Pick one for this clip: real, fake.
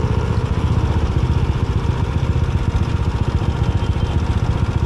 real